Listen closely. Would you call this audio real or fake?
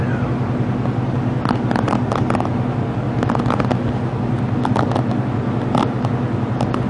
real